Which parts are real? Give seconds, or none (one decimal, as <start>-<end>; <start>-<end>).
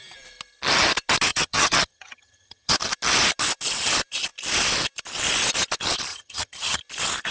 0.0-1.3; 2.7-6.1; 6.8-7.3